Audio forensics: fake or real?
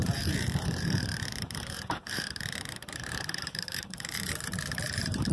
fake